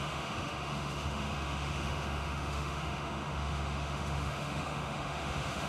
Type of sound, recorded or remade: remade